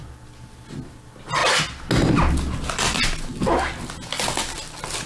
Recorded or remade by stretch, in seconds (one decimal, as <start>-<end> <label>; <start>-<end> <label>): 0.0-5.1 recorded